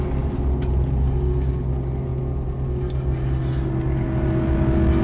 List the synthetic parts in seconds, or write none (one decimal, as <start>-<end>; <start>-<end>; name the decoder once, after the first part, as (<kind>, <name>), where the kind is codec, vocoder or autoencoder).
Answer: none